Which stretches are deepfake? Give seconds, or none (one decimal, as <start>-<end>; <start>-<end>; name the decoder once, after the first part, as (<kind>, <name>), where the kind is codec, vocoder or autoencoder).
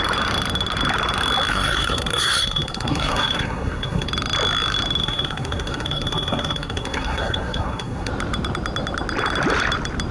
1.5-4.1 (codec, SNAC); 5.0-8.1